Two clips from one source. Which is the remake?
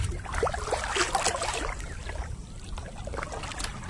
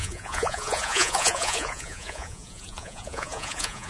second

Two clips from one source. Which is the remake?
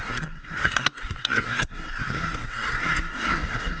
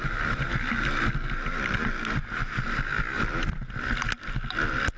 first